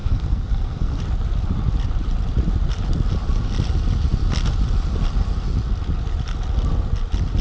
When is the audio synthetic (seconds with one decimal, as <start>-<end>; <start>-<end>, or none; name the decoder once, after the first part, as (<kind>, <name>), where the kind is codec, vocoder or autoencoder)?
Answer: 0.0-1.0 (codec, SNAC)